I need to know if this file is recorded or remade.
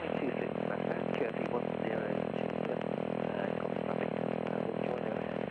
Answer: recorded